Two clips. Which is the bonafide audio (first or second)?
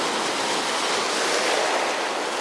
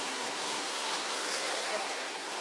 first